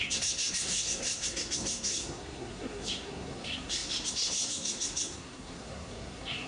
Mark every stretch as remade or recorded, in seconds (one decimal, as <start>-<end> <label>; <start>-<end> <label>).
0.0-6.5 remade